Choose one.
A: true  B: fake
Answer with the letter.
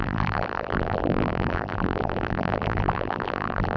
B